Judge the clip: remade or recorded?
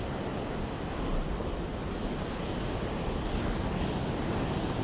recorded